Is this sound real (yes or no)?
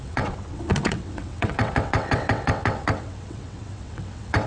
no